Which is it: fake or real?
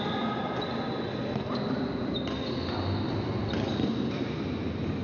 real